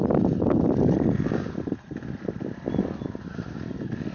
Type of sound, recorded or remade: recorded